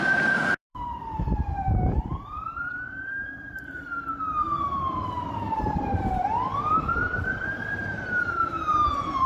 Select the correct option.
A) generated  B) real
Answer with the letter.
A